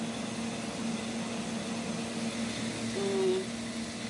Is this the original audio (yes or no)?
yes